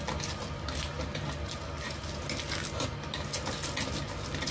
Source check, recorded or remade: recorded